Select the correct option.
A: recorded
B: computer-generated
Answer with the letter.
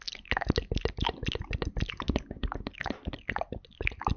A